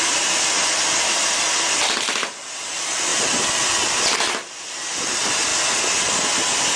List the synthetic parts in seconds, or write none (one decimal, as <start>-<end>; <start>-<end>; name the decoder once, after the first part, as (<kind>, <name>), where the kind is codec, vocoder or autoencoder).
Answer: none